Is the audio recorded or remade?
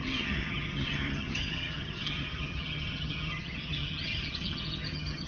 remade